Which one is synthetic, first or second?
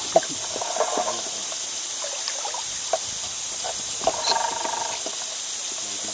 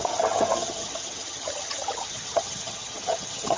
second